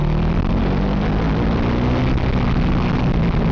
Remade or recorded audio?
recorded